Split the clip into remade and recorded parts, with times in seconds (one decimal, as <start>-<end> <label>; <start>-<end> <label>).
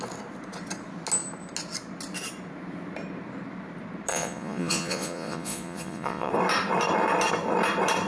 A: 0.0-4.1 recorded; 4.1-6.3 remade; 6.3-8.1 recorded